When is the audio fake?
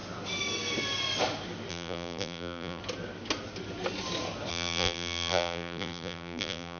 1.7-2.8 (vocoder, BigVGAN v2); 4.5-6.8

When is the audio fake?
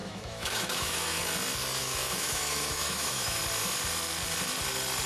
0.0-1.2 (autoencoder, DAC-VAE); 1.8-3.4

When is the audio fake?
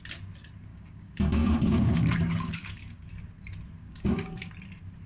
0.7-3.1 (codec, DAC); 3.8-4.5